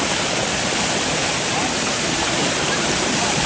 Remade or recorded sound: remade